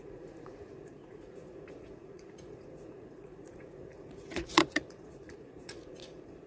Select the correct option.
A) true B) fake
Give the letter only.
B